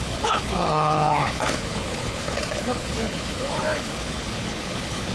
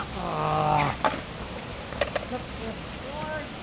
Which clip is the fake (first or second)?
first